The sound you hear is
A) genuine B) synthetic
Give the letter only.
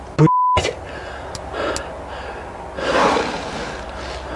A